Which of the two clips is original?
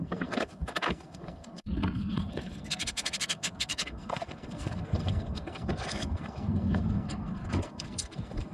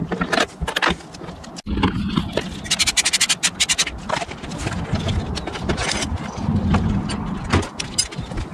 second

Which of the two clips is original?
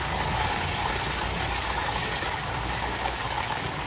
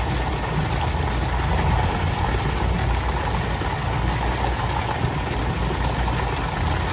second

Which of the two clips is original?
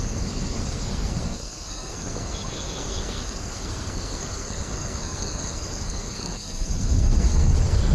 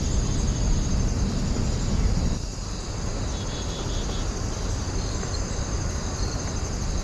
second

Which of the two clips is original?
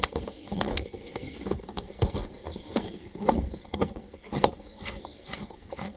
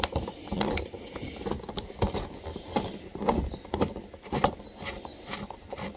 second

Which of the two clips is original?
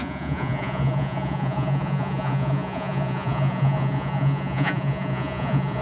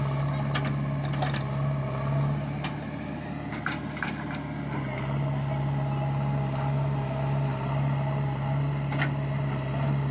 second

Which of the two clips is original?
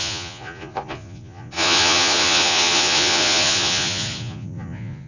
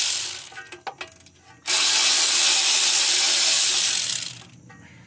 second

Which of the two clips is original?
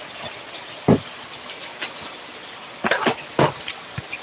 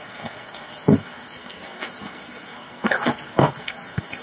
first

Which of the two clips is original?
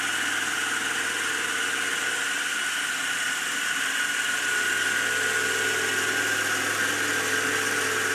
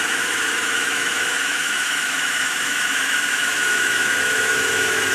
first